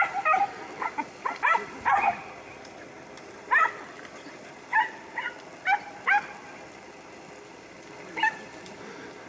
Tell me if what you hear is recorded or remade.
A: remade